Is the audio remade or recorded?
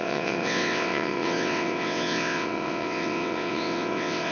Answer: remade